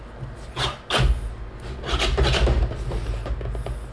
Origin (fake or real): real